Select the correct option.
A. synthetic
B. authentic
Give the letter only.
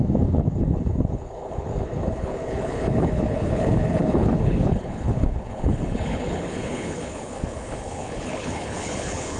A